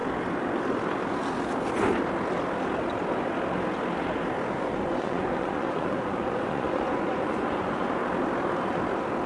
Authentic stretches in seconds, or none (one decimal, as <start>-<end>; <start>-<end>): 0.0-4.5; 8.0-9.3

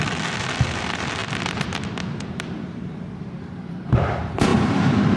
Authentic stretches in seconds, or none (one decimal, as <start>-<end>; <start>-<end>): 1.2-2.2

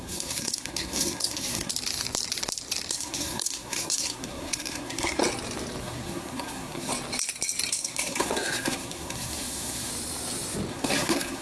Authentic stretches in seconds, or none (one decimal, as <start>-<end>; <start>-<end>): 1.7-2.9; 5.2-5.8; 6.9-7.7; 9.9-10.7